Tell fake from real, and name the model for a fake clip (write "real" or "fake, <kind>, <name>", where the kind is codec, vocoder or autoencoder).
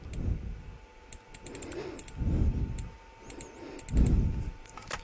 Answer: real